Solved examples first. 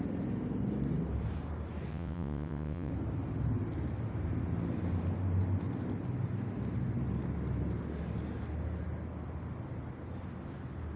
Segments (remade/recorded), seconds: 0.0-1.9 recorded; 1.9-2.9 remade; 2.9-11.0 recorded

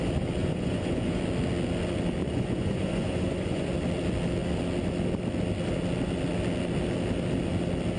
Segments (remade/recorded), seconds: 0.0-0.4 recorded; 0.4-1.2 remade; 1.2-2.2 recorded; 2.2-3.7 remade; 3.7-8.0 recorded

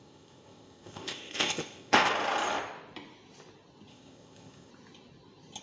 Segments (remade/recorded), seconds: 0.0-2.1 remade; 2.1-3.9 recorded; 3.9-4.7 remade; 4.7-5.6 recorded

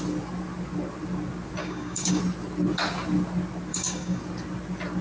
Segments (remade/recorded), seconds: 0.0-1.6 recorded; 1.6-2.2 remade; 2.2-3.7 recorded; 3.7-4.2 remade; 4.2-5.0 recorded

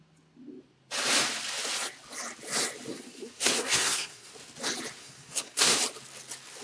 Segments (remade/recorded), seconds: 0.0-2.9 recorded; 2.9-4.3 remade; 4.3-5.0 recorded; 5.0-5.8 remade; 5.8-6.6 recorded

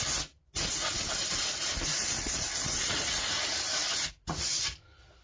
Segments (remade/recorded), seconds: 0.0-2.3 recorded; 2.3-4.6 remade; 4.6-5.2 recorded

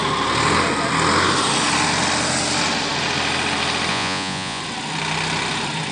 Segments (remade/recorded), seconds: 0.0-3.9 recorded; 3.9-4.6 remade; 4.6-5.9 recorded

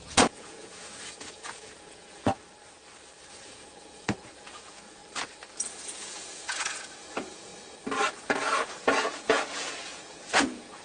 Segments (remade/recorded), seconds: 0.0-2.3 remade; 2.3-3.3 recorded; 3.3-5.0 remade; 5.0-5.7 recorded; 5.7-7.5 remade; 7.5-8.1 recorded; 8.1-10.8 remade